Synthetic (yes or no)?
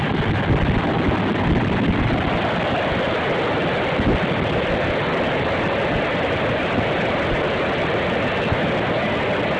no